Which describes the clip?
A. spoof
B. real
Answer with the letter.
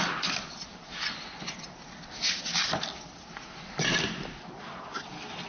B